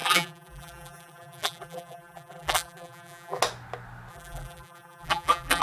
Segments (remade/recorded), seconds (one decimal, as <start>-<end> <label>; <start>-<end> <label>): 0.0-3.4 remade; 3.4-4.1 recorded; 4.1-5.6 remade